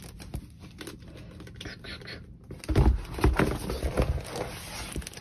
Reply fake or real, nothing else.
real